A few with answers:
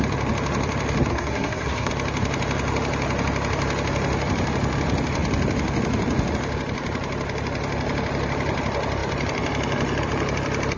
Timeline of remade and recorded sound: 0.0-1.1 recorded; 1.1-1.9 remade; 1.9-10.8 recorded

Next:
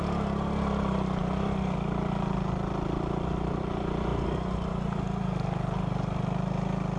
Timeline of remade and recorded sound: 0.0-7.0 recorded

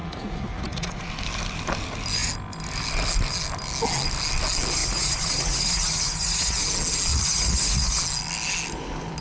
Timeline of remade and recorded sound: 0.0-1.1 remade; 1.1-4.8 recorded; 4.8-6.6 remade; 6.6-7.1 recorded; 7.1-8.0 remade; 8.0-9.2 recorded

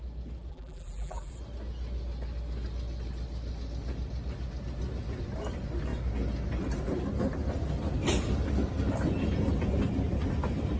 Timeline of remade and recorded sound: 0.0-0.5 recorded; 0.5-1.3 remade; 1.3-10.8 recorded

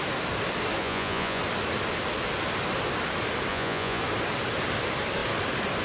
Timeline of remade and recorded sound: 0.0-0.8 recorded; 0.8-1.4 remade; 1.4-3.5 recorded; 3.5-4.0 remade; 4.0-5.8 recorded

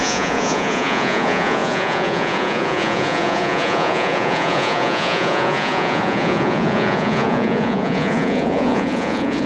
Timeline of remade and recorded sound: 0.0-9.5 remade

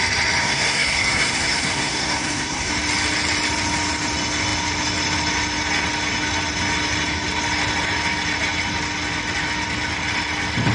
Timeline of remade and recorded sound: 0.0-0.4 recorded; 0.4-2.7 remade; 2.7-10.7 recorded